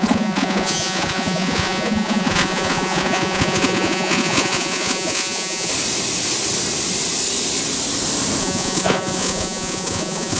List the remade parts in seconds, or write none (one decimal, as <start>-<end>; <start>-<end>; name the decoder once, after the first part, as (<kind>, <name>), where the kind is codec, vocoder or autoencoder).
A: 0.0-5.7 (vocoder, Vocos); 8.4-10.4